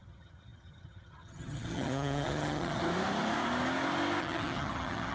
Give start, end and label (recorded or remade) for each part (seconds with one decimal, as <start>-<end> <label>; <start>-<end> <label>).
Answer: 0.0-2.8 remade; 2.8-4.2 recorded; 4.2-5.1 remade